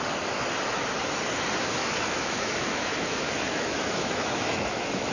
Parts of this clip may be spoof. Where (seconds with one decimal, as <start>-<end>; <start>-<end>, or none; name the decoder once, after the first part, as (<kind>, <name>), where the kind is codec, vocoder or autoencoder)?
1.8-5.1 (autoencoder, DAC-VAE)

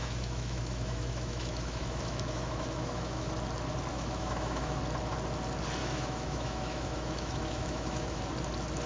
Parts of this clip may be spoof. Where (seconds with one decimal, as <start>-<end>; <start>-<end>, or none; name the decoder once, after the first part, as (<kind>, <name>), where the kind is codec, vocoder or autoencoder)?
0.0-3.3 (autoencoder, DAC-VAE); 3.9-4.8; 5.8-8.2